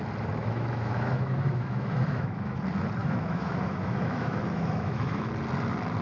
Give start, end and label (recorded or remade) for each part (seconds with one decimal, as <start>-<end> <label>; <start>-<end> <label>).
0.0-0.4 recorded; 0.4-2.6 remade; 2.6-3.0 recorded; 3.0-5.3 remade; 5.3-6.0 recorded